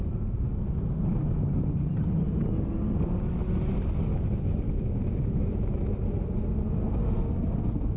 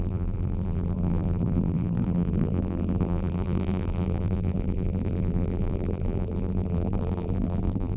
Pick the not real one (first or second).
second